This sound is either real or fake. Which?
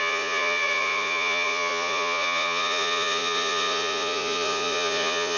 fake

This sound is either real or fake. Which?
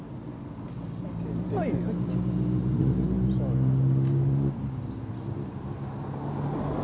real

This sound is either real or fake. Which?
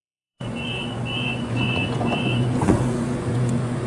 fake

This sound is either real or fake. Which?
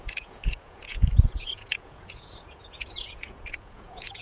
fake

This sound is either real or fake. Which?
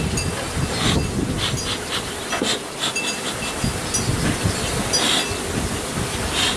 real